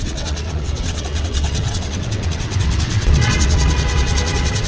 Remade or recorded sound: remade